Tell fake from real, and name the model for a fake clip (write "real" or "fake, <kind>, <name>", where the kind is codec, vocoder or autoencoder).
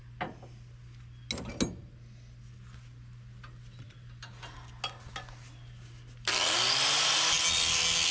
real